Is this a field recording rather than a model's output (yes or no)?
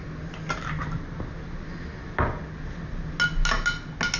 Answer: yes